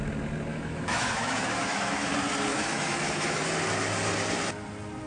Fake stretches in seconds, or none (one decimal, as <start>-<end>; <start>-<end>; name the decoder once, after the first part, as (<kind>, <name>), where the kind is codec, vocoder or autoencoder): 0.5-2.1 (autoencoder, DAC-VAE); 2.5-3.4